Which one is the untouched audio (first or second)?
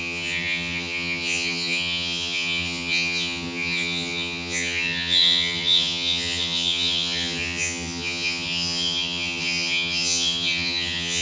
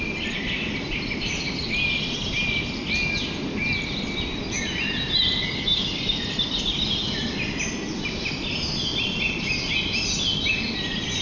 second